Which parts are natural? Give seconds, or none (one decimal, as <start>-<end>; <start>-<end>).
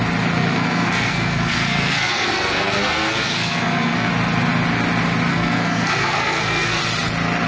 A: 0.0-0.4; 4.1-5.3; 6.8-7.5